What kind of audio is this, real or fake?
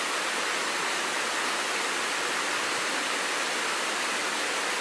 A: real